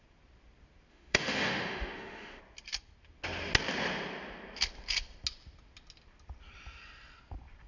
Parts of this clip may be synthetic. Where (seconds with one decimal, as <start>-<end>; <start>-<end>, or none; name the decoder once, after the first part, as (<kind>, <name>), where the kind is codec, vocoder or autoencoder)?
0.9-2.4 (autoencoder, DAC-VAE)